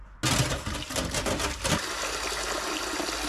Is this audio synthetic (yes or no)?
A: no